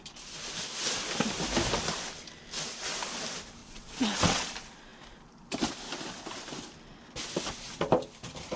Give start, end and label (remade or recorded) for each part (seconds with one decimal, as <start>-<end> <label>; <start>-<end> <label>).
0.0-3.6 recorded; 3.6-4.5 remade; 4.5-8.6 recorded

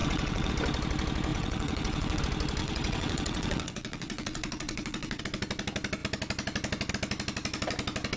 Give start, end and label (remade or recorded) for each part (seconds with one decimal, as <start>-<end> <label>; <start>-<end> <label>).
0.0-0.5 remade; 0.5-1.3 recorded; 1.3-2.2 remade; 2.2-2.6 recorded; 2.6-5.2 remade; 5.2-8.2 recorded

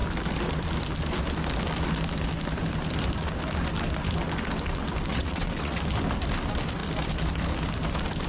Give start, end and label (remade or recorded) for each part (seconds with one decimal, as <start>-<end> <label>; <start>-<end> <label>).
0.0-5.1 recorded; 5.1-5.8 remade; 5.8-8.3 recorded

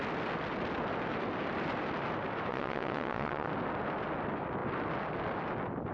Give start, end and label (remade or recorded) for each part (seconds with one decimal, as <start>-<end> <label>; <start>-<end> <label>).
0.0-2.5 recorded; 2.5-3.5 remade; 3.5-5.9 recorded

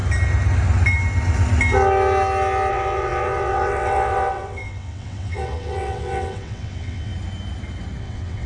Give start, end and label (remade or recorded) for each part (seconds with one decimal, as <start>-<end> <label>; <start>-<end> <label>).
0.0-2.7 recorded; 2.7-7.1 remade; 7.1-8.0 recorded; 8.0-8.5 remade